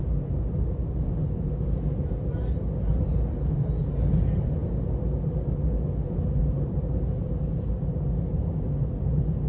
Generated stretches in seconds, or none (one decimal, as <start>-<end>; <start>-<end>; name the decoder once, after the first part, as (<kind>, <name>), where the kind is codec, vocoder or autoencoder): none